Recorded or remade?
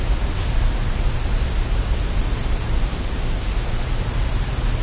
recorded